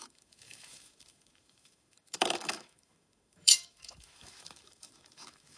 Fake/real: fake